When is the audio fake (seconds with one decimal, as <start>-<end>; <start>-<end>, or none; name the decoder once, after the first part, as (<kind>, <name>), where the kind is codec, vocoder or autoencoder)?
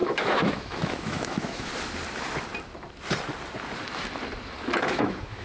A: 0.0-1.7 (autoencoder, DAC-VAE); 4.8-5.4